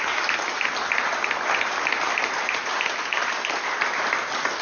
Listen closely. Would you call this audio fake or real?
real